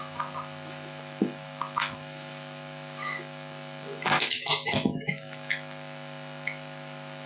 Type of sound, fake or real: fake